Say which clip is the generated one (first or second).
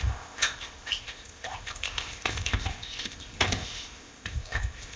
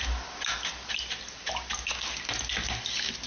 first